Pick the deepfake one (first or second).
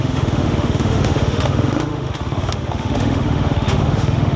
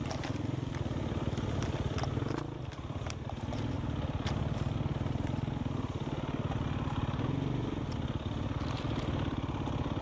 first